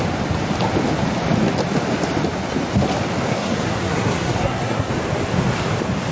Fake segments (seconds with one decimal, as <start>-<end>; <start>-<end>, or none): 3.3-4.9